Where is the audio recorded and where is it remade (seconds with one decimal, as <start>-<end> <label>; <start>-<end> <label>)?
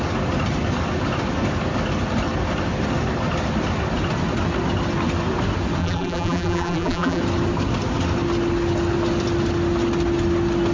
0.0-5.8 recorded; 5.8-7.2 remade; 7.2-10.7 recorded